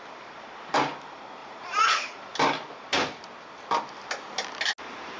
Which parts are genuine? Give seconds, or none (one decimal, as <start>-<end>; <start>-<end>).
0.0-1.4; 2.2-5.2